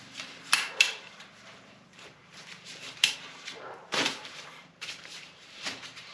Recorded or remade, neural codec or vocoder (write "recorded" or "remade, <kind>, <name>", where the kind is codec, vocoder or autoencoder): remade, vocoder, BigVGAN v2